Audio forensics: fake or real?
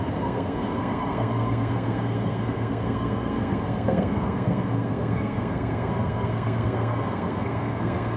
fake